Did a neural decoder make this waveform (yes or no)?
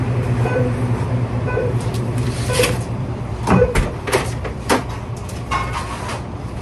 yes